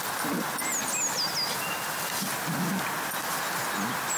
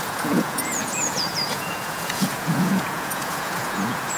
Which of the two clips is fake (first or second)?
second